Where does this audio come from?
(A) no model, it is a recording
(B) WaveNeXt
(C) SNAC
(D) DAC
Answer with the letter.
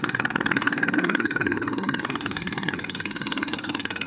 C